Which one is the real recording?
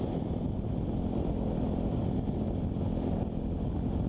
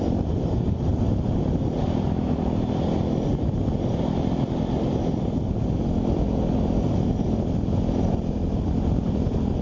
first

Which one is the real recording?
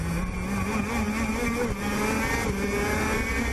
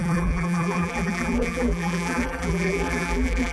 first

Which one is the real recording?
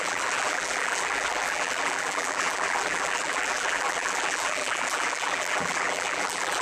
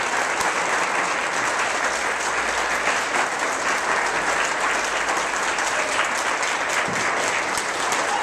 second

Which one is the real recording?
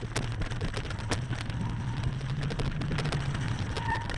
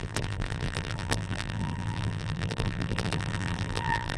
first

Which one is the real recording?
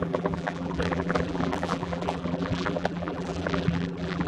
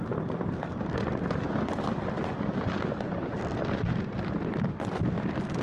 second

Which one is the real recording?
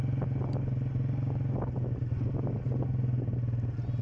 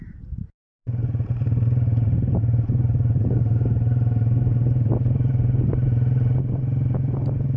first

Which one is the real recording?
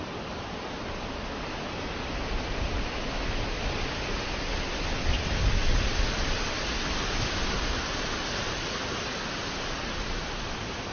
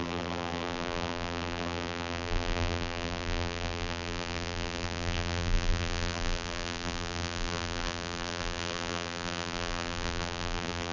first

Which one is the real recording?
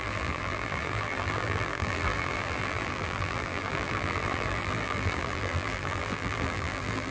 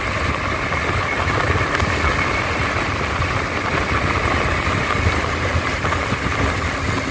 second